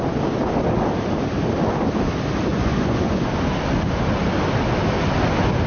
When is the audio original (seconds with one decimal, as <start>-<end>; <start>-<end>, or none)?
0.0-2.5; 3.3-5.7